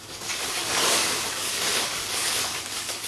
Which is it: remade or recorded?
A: remade